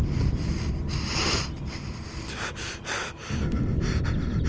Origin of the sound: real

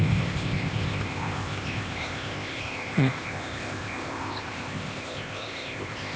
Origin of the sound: fake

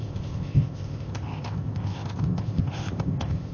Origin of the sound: fake